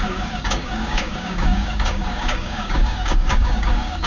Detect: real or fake fake